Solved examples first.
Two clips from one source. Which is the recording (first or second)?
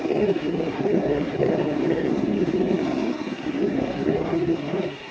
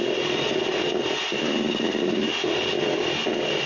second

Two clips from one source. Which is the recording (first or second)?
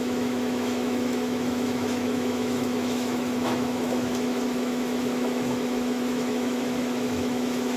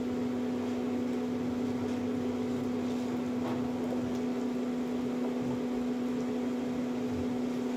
second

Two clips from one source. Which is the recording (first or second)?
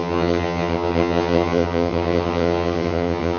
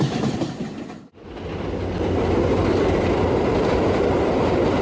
second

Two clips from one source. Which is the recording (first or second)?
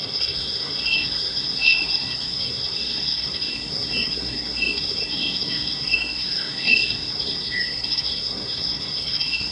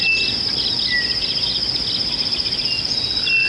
second